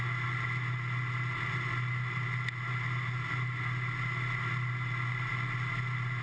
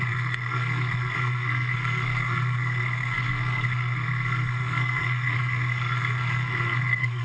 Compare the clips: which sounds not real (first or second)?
second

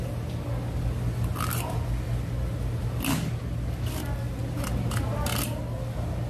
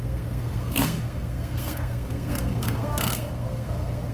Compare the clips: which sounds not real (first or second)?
second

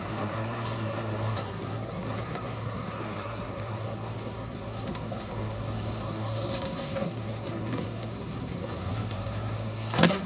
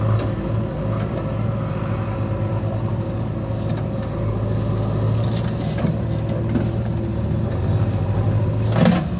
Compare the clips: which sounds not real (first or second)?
first